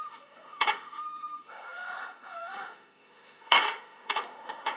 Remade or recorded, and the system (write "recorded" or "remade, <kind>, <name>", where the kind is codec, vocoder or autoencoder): remade, autoencoder, DAC-VAE